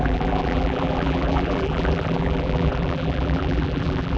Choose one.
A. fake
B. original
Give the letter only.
A